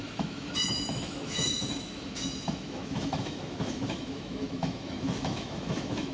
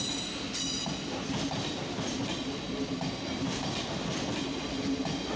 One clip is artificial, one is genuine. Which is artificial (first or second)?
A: first